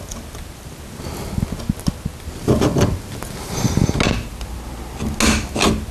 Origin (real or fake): real